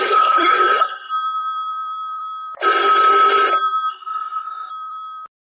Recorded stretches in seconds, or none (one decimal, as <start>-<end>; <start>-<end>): 1.1-3.9; 4.7-5.5